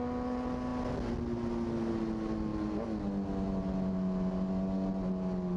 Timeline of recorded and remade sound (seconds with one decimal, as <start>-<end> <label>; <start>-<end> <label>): 0.0-5.6 recorded